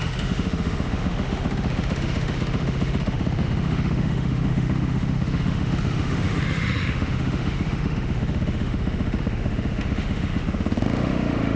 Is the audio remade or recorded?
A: remade